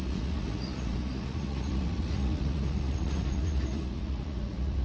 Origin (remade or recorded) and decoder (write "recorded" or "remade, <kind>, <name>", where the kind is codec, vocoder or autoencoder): remade, vocoder, Vocos